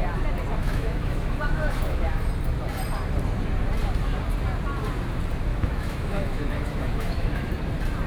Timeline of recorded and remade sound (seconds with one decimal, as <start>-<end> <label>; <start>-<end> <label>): 0.0-0.6 recorded; 0.6-2.3 remade; 2.3-5.5 recorded; 5.5-7.5 remade; 7.5-8.1 recorded